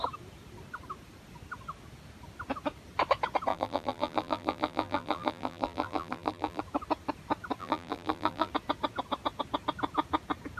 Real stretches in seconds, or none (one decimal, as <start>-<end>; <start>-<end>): 0.0-3.5; 6.6-7.6; 8.5-10.6